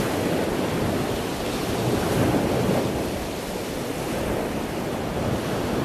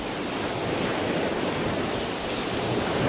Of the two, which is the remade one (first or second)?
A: second